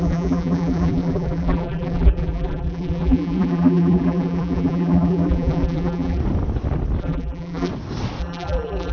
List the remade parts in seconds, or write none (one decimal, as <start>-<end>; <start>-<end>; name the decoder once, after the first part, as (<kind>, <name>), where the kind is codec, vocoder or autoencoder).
0.0-6.2 (vocoder, BigVGAN v2); 7.0-7.7; 8.2-8.9